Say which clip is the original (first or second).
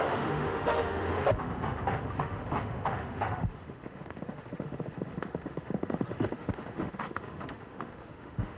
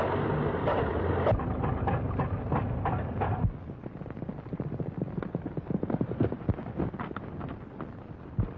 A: second